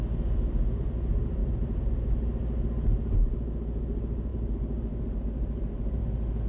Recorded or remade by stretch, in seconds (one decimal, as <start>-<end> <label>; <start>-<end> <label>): 0.0-1.4 recorded; 1.4-2.1 remade; 2.1-4.3 recorded; 4.3-6.0 remade; 6.0-6.5 recorded